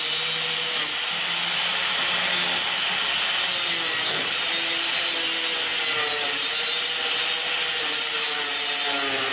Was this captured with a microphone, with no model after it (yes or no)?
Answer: yes